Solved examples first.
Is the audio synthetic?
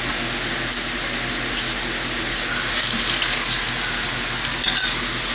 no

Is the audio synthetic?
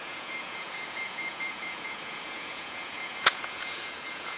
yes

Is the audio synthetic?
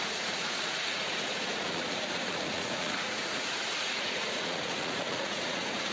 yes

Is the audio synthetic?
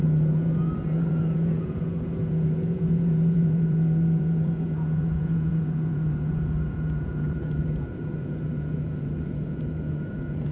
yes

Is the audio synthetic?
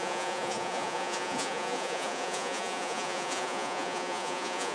yes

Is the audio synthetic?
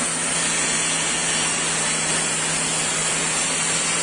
no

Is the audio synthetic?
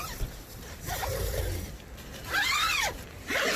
no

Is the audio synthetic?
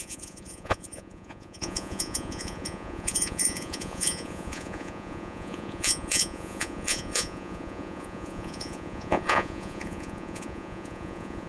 yes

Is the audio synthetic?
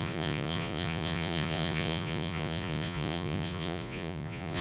yes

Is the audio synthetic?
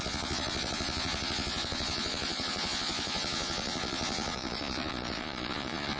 yes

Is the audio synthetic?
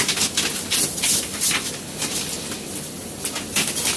no